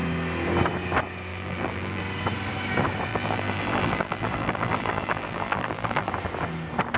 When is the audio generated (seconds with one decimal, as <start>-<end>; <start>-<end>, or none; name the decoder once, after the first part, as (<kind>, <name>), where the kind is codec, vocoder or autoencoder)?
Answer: 1.3-2.0 (vocoder, BigVGAN v2); 3.1-6.1